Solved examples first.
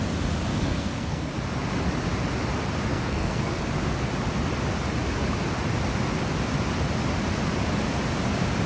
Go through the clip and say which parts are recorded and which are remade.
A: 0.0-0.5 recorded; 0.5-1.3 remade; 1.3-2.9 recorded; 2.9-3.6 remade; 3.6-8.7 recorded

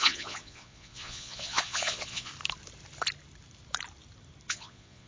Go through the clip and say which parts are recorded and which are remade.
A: 0.0-2.3 remade; 2.3-4.5 recorded; 4.5-5.1 remade

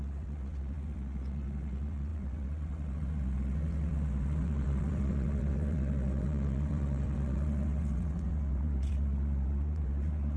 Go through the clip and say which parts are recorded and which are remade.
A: 0.0-10.4 remade

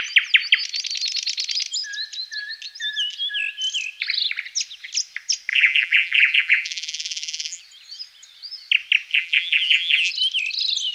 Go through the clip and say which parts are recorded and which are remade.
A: 0.0-5.5 recorded; 5.5-7.6 remade; 7.6-9.1 recorded; 9.1-10.1 remade; 10.1-10.9 recorded

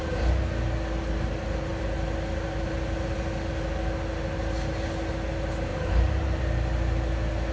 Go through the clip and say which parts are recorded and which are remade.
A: 0.0-5.7 recorded; 5.7-6.4 remade; 6.4-7.5 recorded